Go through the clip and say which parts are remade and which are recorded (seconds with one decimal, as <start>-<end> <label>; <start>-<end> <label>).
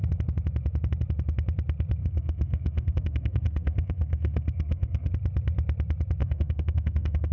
0.0-2.0 recorded; 2.0-5.1 remade; 5.1-6.2 recorded; 6.2-7.3 remade